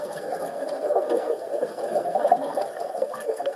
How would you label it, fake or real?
fake